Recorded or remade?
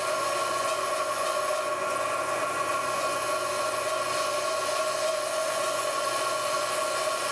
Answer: remade